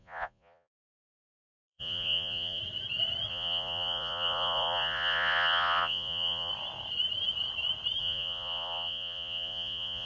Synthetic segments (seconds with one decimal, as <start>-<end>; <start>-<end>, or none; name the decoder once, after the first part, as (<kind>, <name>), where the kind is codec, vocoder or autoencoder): 0.0-2.6 (vocoder, Vocos); 3.3-6.5; 8.0-10.1